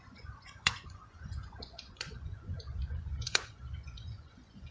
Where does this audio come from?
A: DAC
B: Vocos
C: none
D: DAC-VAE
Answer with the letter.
B